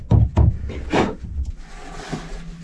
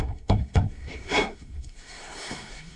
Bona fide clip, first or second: first